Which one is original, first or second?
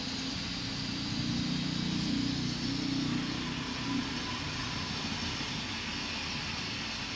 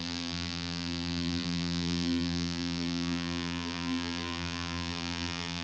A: first